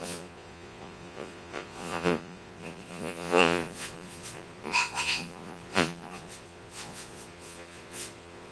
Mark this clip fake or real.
fake